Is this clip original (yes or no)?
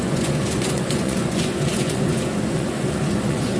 no